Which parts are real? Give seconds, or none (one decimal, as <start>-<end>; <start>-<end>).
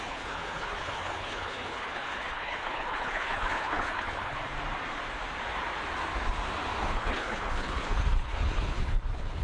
4.4-6.8